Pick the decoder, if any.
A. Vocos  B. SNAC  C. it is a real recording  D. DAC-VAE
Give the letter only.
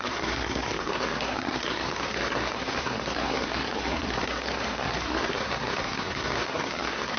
B